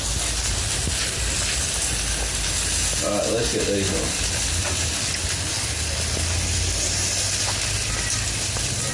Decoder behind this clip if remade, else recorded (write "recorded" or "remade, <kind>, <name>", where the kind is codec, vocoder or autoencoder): recorded